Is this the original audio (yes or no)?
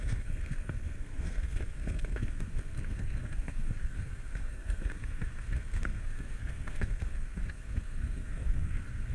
no